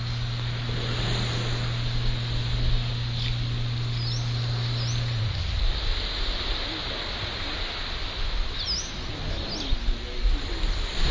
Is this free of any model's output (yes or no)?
yes